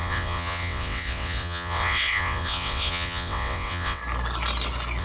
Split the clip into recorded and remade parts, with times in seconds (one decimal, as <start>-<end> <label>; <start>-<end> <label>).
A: 0.0-4.0 remade; 4.0-5.0 recorded